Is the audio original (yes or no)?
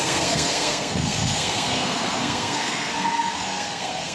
no